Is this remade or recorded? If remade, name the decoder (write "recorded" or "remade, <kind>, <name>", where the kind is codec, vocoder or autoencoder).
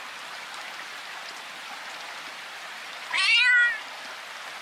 recorded